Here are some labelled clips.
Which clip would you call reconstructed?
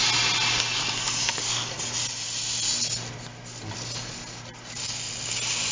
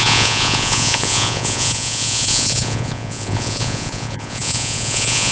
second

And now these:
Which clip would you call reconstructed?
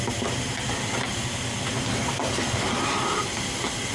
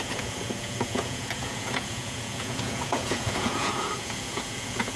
second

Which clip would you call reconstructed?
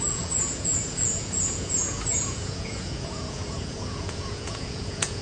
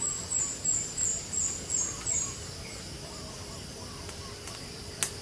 first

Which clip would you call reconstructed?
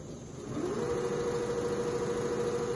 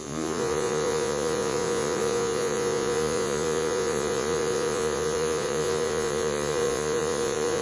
second